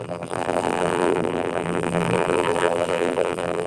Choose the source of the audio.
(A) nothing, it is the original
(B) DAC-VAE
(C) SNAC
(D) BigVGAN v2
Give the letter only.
D